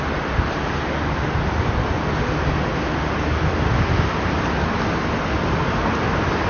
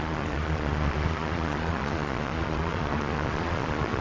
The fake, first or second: second